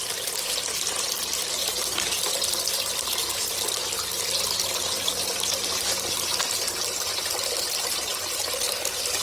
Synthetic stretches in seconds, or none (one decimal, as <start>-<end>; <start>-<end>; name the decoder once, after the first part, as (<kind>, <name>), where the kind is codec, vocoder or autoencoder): none